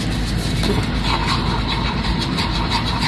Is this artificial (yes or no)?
no